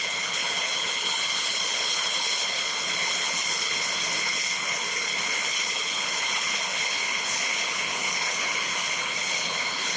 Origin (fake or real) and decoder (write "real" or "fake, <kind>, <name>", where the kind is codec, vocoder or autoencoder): fake, codec, HILCodec